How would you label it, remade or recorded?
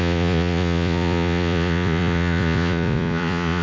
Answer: remade